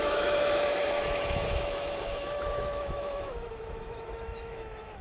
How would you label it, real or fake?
fake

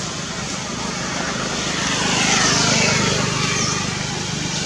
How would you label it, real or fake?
real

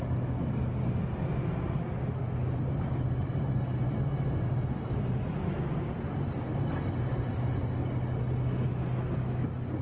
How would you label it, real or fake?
real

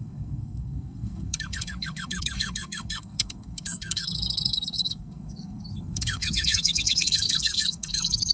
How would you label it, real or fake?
fake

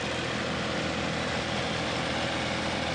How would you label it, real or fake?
real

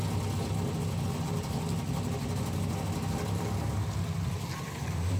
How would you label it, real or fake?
real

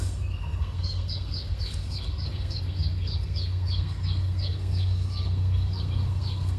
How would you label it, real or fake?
fake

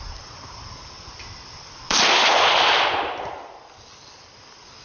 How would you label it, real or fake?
real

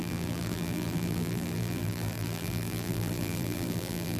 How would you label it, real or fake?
fake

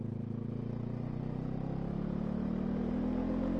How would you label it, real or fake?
real